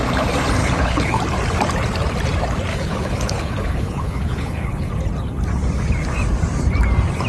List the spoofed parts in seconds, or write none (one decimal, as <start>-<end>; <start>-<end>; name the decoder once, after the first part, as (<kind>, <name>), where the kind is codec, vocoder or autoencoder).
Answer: 0.6-1.2 (codec, HILCodec); 2.7-4.9